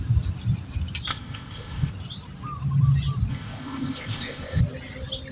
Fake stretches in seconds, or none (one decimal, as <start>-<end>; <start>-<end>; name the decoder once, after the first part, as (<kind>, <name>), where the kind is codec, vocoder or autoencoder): 1.1-1.9 (codec, ZipCodec); 3.3-4.6